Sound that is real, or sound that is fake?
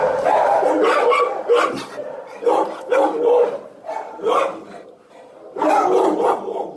real